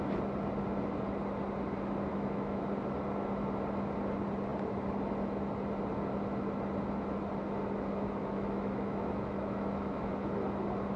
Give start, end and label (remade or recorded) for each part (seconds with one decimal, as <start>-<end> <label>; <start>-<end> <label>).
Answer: 0.0-2.1 recorded; 2.1-2.6 remade; 2.6-8.2 recorded; 8.2-10.1 remade; 10.1-11.0 recorded